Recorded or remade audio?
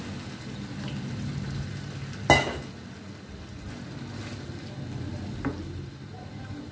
recorded